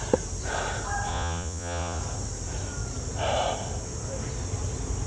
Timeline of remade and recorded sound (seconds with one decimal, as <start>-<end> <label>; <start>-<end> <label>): 0.0-1.1 recorded; 1.1-2.0 remade; 2.0-5.1 recorded